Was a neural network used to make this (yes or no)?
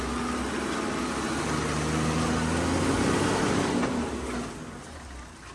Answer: no